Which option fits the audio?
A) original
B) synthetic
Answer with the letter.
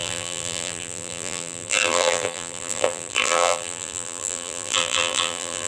B